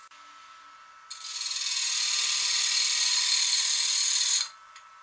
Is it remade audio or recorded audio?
recorded